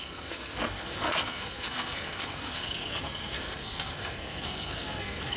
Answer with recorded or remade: remade